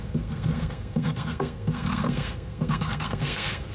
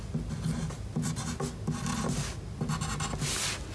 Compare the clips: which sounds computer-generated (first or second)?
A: first